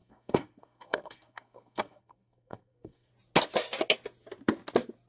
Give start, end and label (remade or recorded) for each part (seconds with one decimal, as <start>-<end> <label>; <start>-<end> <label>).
0.0-3.1 remade; 3.1-5.1 recorded